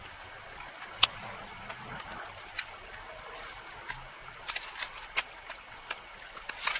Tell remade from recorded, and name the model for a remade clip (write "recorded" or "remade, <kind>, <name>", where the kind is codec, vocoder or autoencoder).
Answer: recorded